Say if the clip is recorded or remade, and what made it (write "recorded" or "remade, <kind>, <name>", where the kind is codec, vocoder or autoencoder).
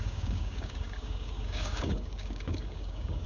remade, codec, DAC